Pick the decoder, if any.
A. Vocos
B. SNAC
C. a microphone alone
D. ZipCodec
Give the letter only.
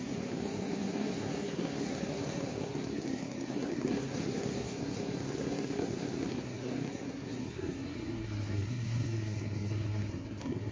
B